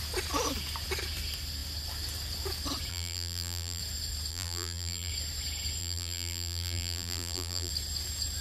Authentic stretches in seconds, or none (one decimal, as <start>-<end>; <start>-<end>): 0.0-2.9; 3.8-4.3; 5.1-5.8; 7.7-8.4